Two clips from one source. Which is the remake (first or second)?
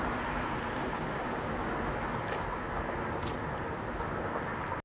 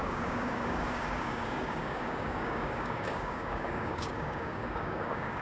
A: second